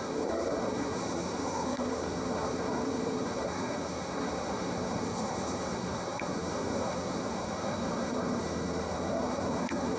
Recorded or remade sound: remade